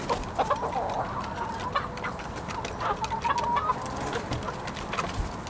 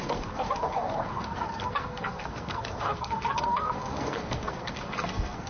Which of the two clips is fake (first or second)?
second